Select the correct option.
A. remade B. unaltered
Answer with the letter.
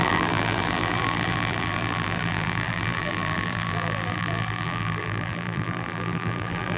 A